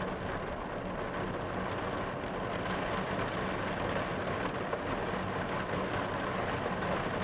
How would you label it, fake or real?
real